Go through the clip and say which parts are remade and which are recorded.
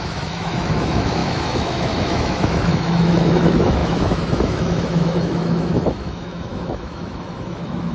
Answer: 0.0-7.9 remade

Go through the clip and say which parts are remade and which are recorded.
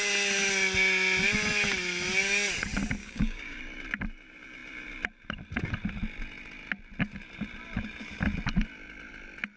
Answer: 0.0-3.0 recorded; 3.0-3.6 remade; 3.6-9.6 recorded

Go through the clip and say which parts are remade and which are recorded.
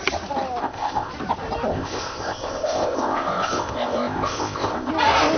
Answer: 0.0-0.6 recorded; 0.6-1.1 remade; 1.1-1.7 recorded; 1.7-4.9 remade; 4.9-5.4 recorded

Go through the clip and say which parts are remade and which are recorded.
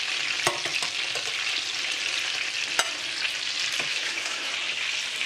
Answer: 0.0-3.9 recorded; 3.9-4.5 remade; 4.5-5.3 recorded